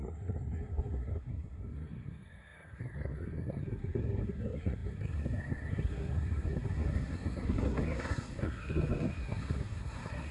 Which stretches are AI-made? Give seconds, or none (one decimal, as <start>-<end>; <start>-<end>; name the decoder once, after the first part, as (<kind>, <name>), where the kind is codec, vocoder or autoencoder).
0.0-10.3 (codec, SNAC)